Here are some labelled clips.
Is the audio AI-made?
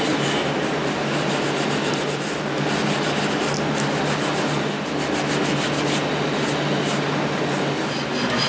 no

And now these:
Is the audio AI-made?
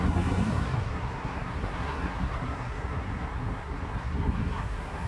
yes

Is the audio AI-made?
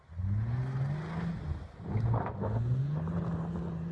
no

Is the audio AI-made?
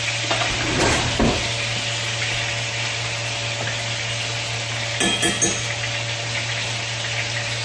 no